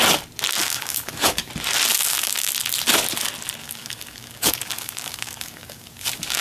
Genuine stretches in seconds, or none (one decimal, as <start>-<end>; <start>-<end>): 0.0-0.6; 1.5-1.9; 2.5-3.6